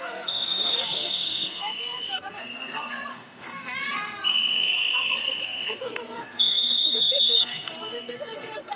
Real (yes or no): no